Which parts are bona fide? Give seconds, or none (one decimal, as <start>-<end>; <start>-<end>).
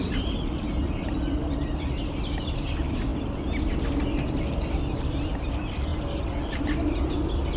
0.0-7.6